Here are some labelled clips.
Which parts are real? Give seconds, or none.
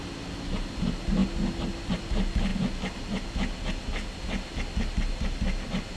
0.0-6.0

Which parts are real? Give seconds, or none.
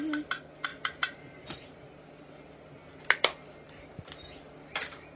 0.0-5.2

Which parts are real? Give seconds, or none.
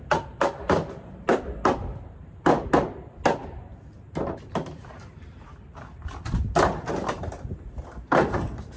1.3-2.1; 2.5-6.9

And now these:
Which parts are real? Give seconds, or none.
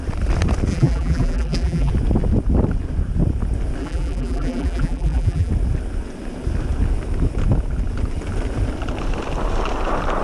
0.0-0.7; 1.9-3.8; 5.5-10.2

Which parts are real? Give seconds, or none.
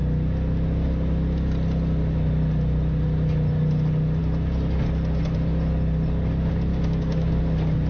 0.0-6.7; 7.4-7.9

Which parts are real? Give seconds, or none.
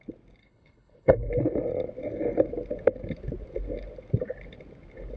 0.0-0.4; 1.3-5.2